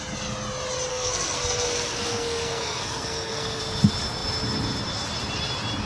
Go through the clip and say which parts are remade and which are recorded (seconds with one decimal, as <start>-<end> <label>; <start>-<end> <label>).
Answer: 0.0-0.9 recorded; 0.9-3.6 remade; 3.6-5.9 recorded